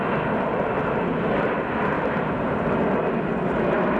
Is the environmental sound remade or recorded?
recorded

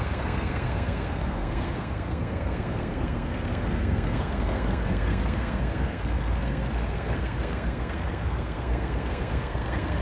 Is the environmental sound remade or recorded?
remade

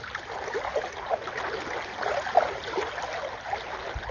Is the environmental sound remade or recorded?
recorded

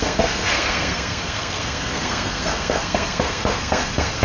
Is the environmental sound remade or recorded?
remade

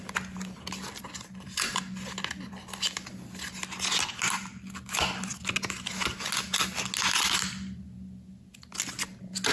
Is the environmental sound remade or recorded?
recorded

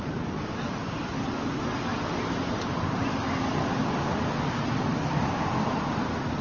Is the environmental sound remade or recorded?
recorded